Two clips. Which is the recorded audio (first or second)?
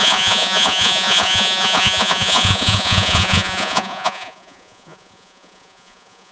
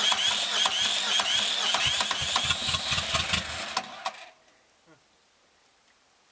second